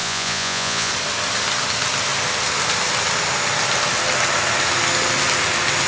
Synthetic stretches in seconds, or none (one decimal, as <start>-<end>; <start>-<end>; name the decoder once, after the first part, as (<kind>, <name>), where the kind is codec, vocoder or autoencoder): 0.0-0.9 (vocoder, Vocos)